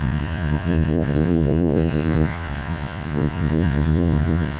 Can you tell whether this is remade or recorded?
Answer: remade